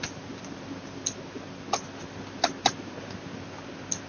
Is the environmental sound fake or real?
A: real